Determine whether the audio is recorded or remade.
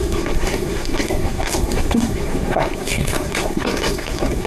remade